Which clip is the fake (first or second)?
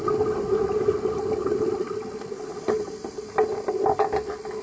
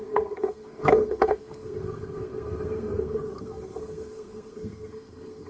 second